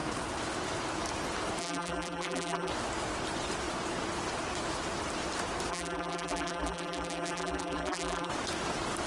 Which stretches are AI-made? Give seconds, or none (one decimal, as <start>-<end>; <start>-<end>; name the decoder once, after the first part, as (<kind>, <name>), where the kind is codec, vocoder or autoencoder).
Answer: 1.6-2.7 (vocoder, BigVGAN v2); 5.7-8.3

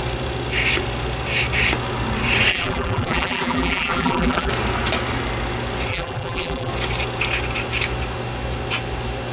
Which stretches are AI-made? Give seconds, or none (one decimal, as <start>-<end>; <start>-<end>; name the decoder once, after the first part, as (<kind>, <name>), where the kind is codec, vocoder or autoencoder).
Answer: 2.5-4.5 (vocoder, BigVGAN v2); 5.9-6.7

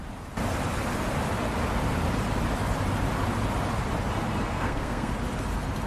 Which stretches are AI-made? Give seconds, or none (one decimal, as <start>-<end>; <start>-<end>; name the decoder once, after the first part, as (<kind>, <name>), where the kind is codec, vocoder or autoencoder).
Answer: 4.5-5.1 (codec, SNAC)

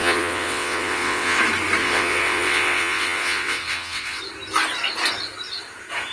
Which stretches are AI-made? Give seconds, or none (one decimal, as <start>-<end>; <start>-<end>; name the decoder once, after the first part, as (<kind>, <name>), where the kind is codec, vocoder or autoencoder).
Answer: 0.0-1.4 (vocoder, WaveNeXt); 1.8-4.2